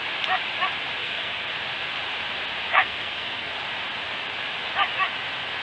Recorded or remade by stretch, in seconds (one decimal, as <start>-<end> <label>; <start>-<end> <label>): 0.0-1.0 recorded; 1.0-1.5 remade; 1.5-2.7 recorded; 2.7-3.5 remade; 3.5-5.6 recorded